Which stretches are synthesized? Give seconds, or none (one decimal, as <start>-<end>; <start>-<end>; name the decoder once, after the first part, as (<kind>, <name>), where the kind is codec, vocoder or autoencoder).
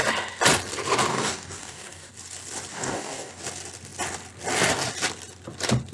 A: 1.1-2.1 (codec, DAC); 2.7-3.4